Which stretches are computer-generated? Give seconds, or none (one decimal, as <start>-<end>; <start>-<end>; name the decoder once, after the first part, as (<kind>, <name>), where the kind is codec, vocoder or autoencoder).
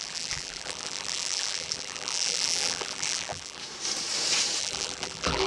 0.0-3.6 (vocoder, BigVGAN v2); 4.6-5.5